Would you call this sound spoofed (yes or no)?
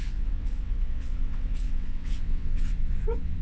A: yes